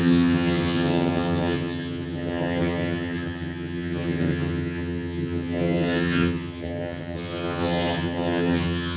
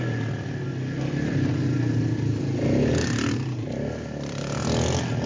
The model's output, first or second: first